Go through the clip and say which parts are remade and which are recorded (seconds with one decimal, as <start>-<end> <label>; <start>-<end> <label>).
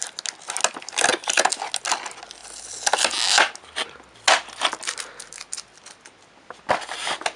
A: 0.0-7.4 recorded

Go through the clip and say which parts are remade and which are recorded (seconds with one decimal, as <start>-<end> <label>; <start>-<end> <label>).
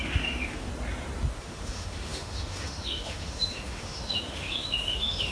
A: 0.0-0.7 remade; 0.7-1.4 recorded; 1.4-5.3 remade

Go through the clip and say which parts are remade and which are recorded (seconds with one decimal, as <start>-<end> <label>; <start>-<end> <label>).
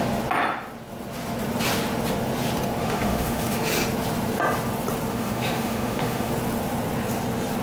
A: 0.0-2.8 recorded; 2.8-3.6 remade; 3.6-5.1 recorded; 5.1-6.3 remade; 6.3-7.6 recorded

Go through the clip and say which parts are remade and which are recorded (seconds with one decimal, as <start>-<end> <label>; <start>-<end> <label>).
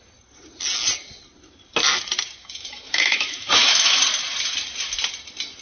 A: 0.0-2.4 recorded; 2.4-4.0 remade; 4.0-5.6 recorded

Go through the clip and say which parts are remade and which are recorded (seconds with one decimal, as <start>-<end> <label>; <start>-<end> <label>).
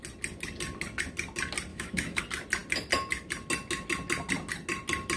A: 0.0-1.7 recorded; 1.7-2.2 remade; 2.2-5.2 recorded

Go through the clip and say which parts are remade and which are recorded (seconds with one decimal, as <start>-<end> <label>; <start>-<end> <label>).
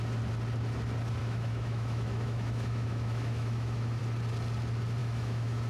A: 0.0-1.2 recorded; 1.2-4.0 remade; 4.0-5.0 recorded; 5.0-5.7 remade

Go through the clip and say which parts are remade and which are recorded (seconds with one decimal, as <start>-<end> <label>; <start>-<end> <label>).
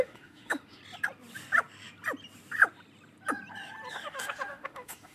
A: 0.0-0.8 remade; 0.8-3.9 recorded; 3.9-5.1 remade